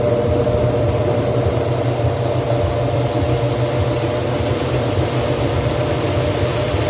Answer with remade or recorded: recorded